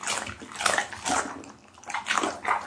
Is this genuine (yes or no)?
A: yes